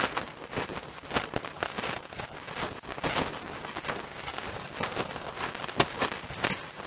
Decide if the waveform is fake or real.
real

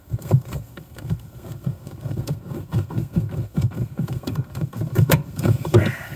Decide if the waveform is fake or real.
fake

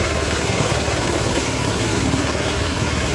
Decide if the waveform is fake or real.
fake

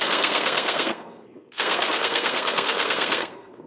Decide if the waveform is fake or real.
fake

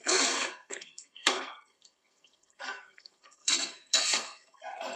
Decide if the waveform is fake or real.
fake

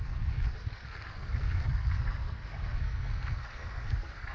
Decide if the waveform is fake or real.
fake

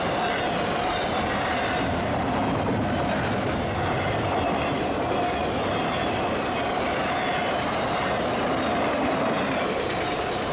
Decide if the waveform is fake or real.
real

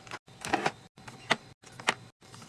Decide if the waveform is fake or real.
real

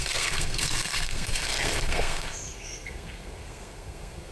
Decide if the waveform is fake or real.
fake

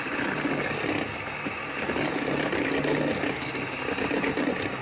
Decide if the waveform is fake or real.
real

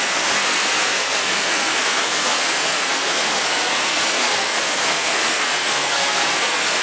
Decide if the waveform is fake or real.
fake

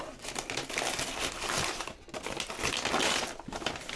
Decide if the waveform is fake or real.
real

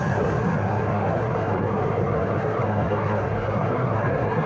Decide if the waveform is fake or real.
fake